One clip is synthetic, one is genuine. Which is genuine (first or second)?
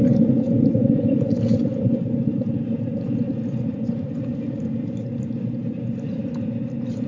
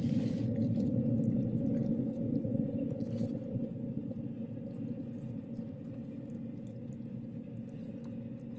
second